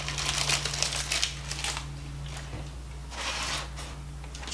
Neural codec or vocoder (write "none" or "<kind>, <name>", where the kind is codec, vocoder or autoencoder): none